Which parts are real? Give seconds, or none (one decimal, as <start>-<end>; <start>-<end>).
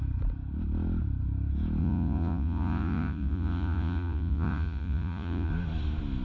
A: 0.0-1.8; 5.5-6.2